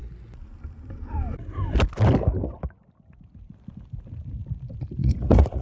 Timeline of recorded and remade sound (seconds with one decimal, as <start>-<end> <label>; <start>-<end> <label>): 0.0-5.0 recorded; 5.0-5.6 remade